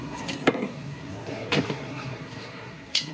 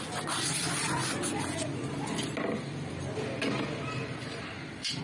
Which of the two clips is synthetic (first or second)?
first